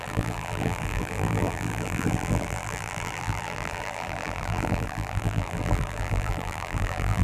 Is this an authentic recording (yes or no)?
no